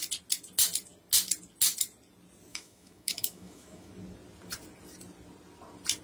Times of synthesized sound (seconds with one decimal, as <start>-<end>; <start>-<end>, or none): 2.5-3.9